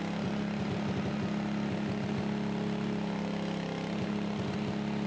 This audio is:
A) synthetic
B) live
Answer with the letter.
B